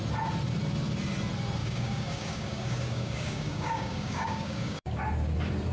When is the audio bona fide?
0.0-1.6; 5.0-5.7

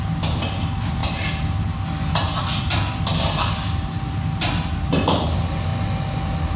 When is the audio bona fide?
0.0-6.6

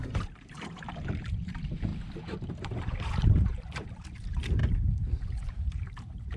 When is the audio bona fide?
1.9-2.5

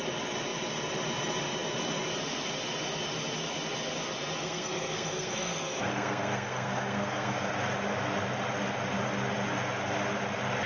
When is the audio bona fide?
0.0-4.4; 7.5-10.7

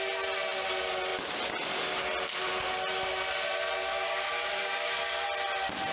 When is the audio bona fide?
0.0-3.8; 4.9-5.9

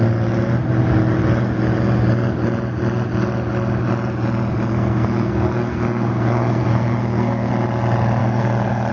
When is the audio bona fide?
0.0-4.7; 7.5-8.2